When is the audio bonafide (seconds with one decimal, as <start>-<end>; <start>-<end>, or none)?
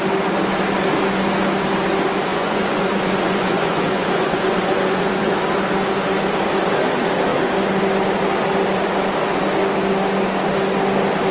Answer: 0.0-2.3; 5.3-11.3